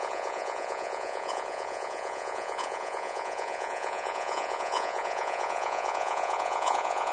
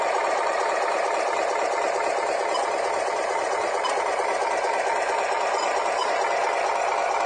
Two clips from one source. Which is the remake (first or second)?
first